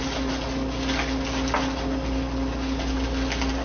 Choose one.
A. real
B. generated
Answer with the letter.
A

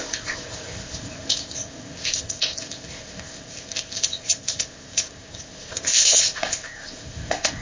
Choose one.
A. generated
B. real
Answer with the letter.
A